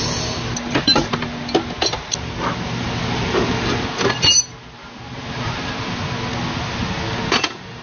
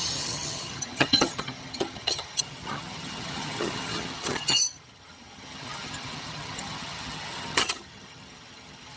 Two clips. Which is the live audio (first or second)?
first